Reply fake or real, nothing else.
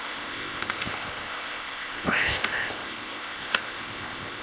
fake